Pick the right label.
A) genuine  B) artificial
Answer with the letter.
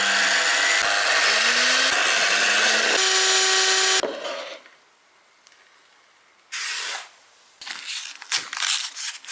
A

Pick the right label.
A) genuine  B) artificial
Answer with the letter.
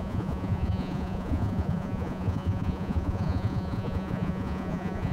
B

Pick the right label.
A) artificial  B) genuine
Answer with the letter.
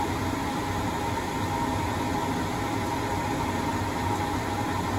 B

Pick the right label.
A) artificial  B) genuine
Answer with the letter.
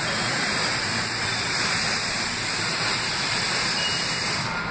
A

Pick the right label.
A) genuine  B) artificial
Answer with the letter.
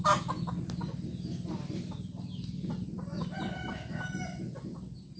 A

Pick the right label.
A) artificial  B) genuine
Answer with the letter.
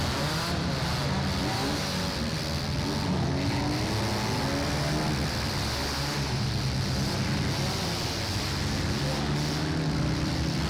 B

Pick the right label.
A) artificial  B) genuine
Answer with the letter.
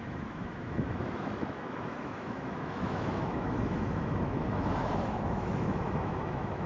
A